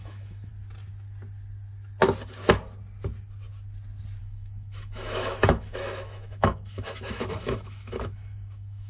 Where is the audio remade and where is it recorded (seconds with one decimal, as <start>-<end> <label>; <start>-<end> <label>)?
0.0-0.5 remade; 0.5-4.2 recorded; 4.2-8.9 remade